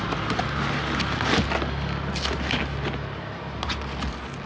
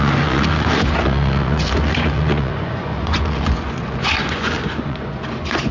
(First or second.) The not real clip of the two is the second